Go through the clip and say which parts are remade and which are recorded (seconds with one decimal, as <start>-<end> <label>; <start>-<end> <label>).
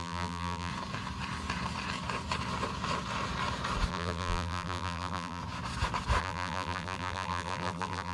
0.0-0.7 remade; 0.7-3.9 recorded; 3.9-5.4 remade; 5.4-6.2 recorded; 6.2-8.1 remade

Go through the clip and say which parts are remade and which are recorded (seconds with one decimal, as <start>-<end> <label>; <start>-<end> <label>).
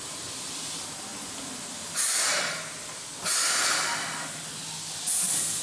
0.0-5.6 recorded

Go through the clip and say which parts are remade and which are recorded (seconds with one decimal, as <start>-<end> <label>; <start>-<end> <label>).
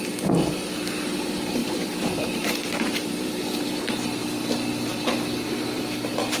0.0-1.6 recorded; 1.6-3.8 remade; 3.8-6.4 recorded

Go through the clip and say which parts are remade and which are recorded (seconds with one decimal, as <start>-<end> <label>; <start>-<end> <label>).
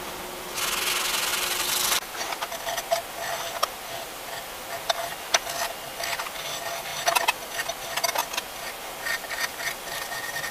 0.0-1.3 recorded; 1.3-2.1 remade; 2.1-10.5 recorded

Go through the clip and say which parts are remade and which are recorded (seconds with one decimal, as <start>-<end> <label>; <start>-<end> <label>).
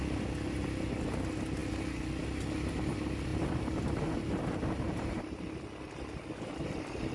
0.0-3.3 recorded; 3.3-5.4 remade; 5.4-7.1 recorded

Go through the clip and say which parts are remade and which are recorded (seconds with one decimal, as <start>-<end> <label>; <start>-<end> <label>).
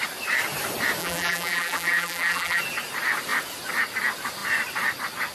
0.0-1.0 recorded; 1.0-2.6 remade; 2.6-5.3 recorded